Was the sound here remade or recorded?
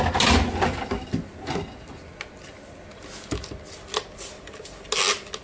recorded